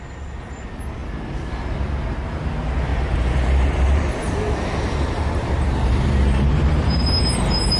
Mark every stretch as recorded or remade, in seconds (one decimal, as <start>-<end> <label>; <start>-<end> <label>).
0.0-2.9 recorded; 2.9-7.8 remade